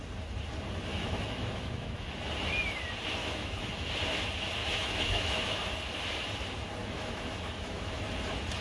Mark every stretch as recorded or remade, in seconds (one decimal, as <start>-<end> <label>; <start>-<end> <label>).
0.0-0.9 recorded; 0.9-2.3 remade; 2.3-3.2 recorded; 3.2-3.9 remade; 3.9-4.6 recorded; 4.6-5.7 remade; 5.7-6.8 recorded; 6.8-8.0 remade; 8.0-8.6 recorded